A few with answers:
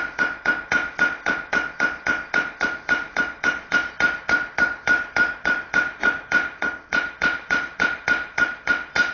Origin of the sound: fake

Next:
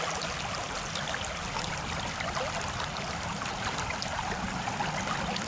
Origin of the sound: real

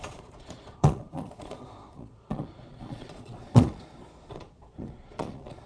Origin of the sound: fake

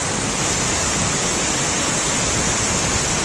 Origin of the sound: real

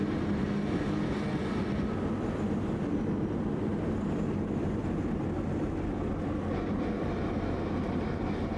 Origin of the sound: real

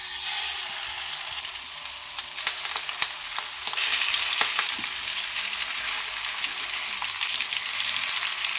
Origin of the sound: real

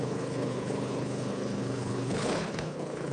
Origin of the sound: fake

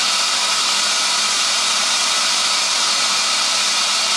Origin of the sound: real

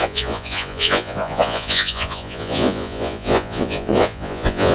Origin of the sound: fake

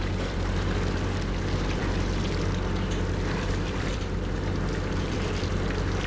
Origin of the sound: fake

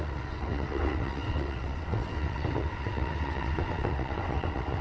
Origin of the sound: fake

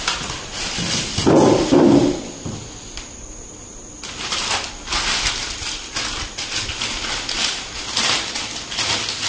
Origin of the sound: real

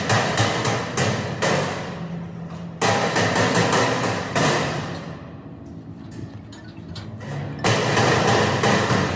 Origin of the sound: real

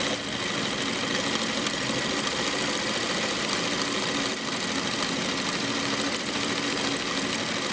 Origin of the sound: real